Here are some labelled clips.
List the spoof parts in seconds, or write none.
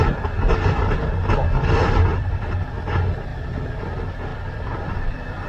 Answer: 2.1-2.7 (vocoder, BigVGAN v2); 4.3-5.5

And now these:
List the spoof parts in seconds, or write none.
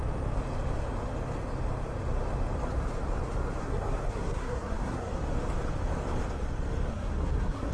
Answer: 3.6-5.2 (codec, SNAC); 6.9-7.7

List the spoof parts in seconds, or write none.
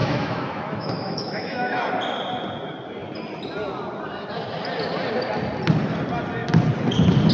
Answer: 0.0-1.9 (autoencoder, DAC-VAE)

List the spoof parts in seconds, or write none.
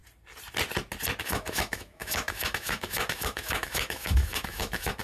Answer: 1.2-5.0 (autoencoder, DAC-VAE)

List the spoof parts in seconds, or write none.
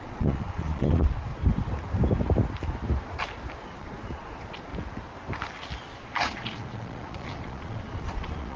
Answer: 0.0-1.3 (vocoder, Vocos); 3.8-4.7; 5.9-8.6